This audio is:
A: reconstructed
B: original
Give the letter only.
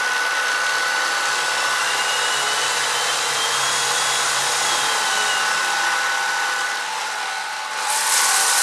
B